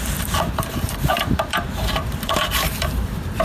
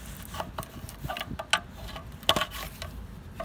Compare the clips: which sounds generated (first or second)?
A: first